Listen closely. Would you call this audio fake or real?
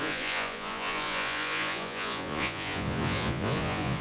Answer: fake